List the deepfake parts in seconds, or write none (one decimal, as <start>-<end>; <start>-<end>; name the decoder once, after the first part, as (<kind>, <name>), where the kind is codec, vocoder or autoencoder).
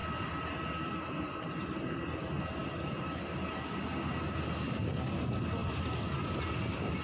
0.0-1.8 (vocoder, BigVGAN v2); 2.6-3.2; 5.6-7.0